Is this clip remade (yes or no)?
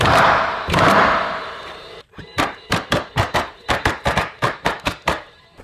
yes